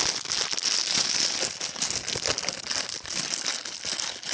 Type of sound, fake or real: real